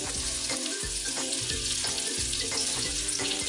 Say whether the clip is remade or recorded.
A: remade